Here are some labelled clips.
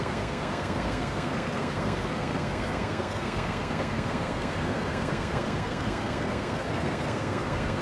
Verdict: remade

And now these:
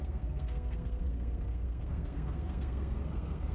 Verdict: remade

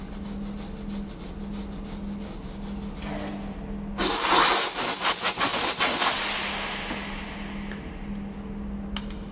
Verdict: recorded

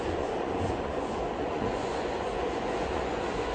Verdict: remade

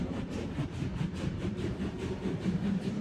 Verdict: remade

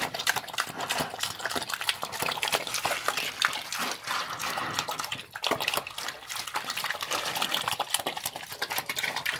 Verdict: recorded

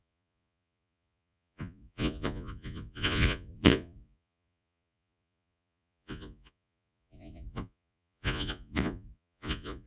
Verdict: remade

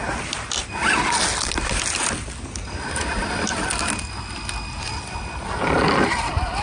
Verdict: recorded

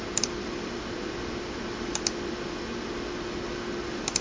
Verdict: recorded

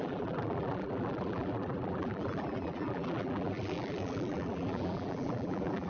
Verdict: remade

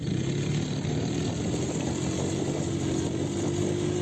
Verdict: recorded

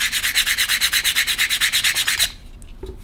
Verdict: recorded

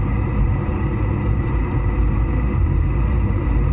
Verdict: remade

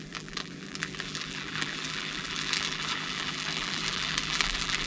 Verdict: remade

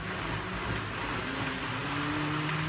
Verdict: recorded